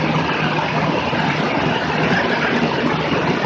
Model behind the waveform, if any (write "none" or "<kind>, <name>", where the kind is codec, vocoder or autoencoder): none